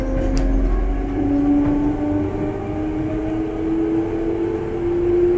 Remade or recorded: recorded